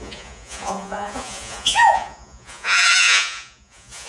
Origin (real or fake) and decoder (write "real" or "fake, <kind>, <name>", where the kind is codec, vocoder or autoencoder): fake, vocoder, Vocos